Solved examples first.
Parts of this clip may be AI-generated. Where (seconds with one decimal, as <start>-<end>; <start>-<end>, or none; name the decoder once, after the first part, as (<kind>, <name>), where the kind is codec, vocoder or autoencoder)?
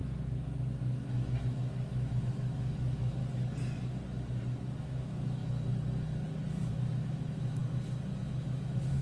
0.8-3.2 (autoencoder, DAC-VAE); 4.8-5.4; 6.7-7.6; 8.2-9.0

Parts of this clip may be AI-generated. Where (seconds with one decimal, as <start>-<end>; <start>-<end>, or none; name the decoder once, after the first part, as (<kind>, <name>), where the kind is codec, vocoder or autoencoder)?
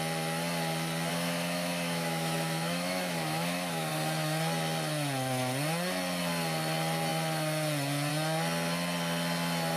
1.1-3.9 (autoencoder, DAC-VAE)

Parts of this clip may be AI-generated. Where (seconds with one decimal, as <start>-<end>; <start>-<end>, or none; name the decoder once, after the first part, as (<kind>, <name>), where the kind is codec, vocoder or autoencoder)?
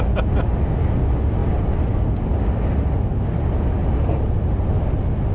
none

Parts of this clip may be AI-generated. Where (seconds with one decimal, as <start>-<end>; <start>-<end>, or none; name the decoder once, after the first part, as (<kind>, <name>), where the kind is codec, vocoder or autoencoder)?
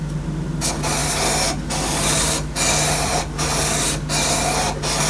none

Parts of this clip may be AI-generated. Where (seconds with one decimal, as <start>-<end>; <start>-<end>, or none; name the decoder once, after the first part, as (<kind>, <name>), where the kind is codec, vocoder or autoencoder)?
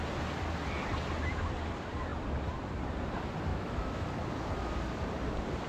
3.5-4.1 (autoencoder, DAC-VAE)